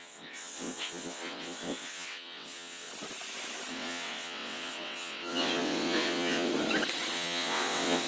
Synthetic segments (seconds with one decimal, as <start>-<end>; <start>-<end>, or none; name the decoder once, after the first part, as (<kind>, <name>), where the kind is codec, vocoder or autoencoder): 0.0-2.9 (vocoder, WaveNeXt); 3.7-6.5; 7.1-8.1